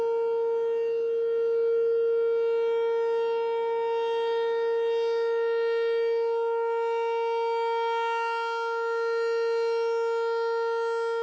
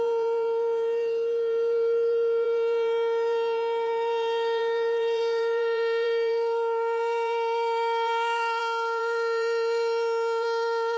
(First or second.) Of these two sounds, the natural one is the first